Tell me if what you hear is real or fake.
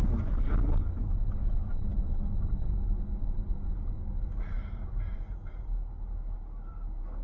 real